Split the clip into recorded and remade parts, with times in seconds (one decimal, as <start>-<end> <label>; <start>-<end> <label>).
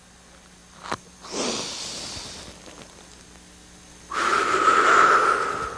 0.0-5.8 recorded